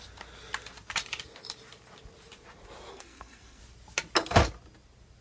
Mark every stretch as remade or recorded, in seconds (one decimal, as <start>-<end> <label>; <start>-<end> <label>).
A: 0.0-2.9 recorded; 2.9-3.6 remade; 3.6-5.2 recorded